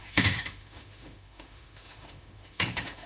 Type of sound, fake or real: fake